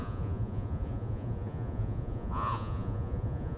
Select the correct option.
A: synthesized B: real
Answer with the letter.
A